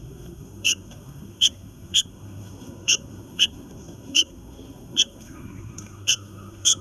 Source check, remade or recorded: remade